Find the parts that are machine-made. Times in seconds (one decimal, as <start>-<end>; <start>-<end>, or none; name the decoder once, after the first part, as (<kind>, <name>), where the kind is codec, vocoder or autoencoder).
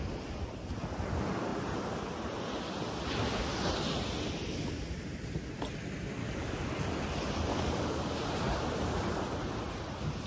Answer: 6.2-6.7 (codec, DAC); 7.5-8.2